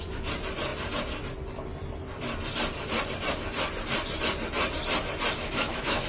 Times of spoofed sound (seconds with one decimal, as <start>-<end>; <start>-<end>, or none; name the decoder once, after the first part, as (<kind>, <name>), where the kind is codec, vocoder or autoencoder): 5.4-6.1 (autoencoder, DAC-VAE)